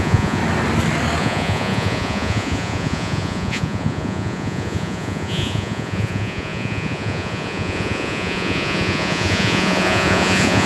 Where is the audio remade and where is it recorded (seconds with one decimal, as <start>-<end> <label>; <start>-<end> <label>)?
0.0-0.4 remade; 0.4-1.2 recorded; 1.2-10.7 remade